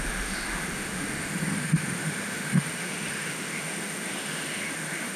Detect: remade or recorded remade